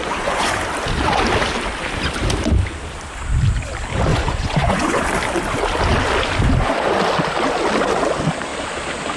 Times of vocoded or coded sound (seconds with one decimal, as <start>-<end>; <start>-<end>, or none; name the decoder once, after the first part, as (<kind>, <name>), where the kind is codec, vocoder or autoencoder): 0.0-0.5 (vocoder, Vocos); 4.1-5.0